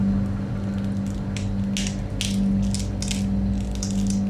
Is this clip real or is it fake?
real